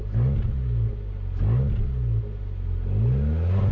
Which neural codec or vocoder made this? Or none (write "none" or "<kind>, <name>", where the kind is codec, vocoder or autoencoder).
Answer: none